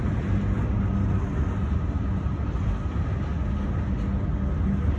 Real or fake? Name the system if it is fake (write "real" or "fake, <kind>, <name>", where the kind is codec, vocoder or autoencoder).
real